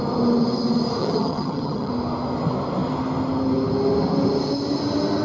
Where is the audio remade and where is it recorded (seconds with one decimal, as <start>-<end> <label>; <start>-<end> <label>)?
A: 0.0-1.0 recorded; 1.0-1.9 remade; 1.9-5.2 recorded